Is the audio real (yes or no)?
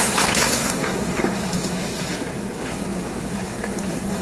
no